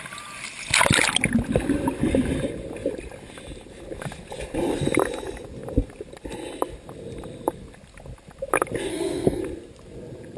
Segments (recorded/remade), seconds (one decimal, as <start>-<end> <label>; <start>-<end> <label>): 0.0-8.9 recorded; 8.9-9.4 remade; 9.4-10.4 recorded